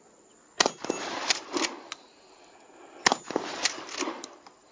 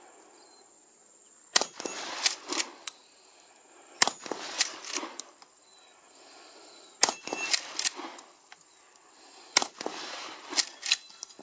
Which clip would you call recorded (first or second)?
first